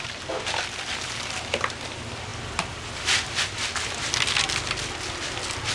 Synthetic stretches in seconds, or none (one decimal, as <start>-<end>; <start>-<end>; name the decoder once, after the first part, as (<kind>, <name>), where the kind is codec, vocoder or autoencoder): none